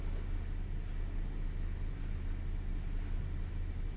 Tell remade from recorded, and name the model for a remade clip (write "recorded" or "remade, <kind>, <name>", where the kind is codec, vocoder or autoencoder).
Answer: recorded